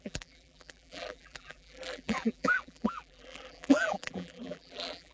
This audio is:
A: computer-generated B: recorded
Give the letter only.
A